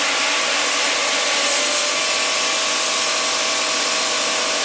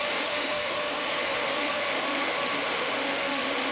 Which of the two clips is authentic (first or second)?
first